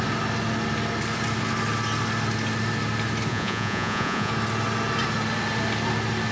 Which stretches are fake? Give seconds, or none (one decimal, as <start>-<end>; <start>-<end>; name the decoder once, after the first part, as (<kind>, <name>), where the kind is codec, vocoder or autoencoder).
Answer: 3.3-4.3 (vocoder, Vocos)